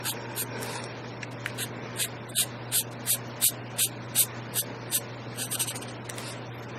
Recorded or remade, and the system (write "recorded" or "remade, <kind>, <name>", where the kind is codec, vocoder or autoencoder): recorded